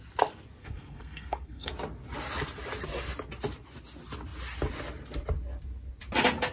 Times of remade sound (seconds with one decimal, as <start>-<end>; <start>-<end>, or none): 0.6-1.7